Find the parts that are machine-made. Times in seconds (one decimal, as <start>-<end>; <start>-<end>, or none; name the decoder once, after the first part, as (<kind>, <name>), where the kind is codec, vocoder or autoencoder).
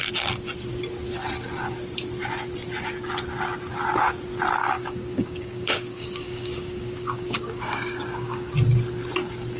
4.6-8.5 (codec, DAC)